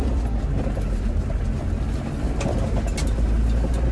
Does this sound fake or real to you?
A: real